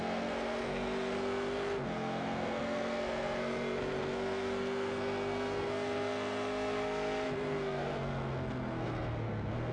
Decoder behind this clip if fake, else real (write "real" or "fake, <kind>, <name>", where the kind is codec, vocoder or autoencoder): fake, codec, SNAC